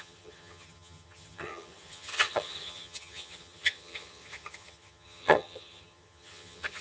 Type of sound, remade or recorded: remade